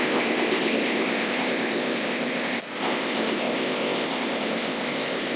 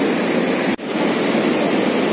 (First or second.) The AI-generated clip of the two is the first